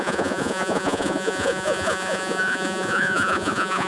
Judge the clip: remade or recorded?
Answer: remade